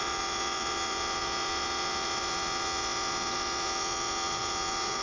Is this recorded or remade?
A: remade